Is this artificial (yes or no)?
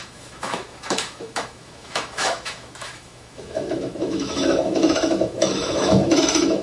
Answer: yes